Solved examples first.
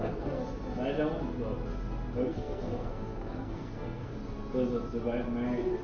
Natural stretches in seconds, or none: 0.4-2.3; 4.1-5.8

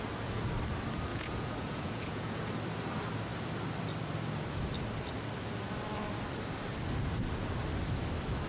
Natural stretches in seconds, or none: 0.0-1.1; 2.5-8.5

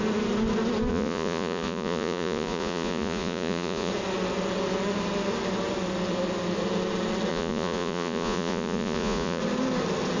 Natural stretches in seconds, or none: 0.0-0.9; 3.9-7.3; 9.4-10.2